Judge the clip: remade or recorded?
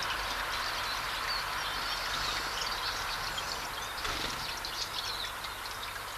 recorded